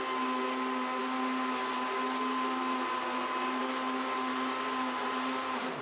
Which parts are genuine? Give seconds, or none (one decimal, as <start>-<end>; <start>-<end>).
0.0-5.8

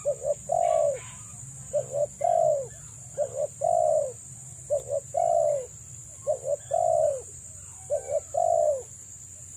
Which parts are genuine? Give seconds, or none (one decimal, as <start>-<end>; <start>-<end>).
0.0-9.6

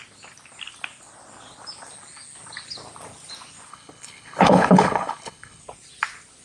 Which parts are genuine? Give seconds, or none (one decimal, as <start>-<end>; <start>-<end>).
0.0-3.7; 5.6-6.4

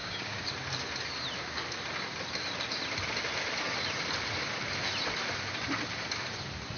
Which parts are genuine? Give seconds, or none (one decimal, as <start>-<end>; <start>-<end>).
0.5-6.8

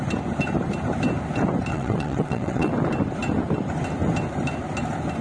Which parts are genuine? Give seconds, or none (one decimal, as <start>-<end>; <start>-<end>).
0.0-1.7; 2.7-5.2